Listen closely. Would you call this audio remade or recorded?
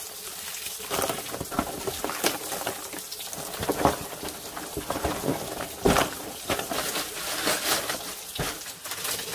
recorded